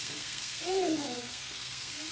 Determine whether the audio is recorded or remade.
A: remade